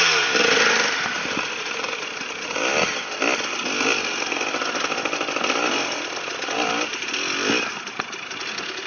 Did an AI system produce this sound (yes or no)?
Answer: no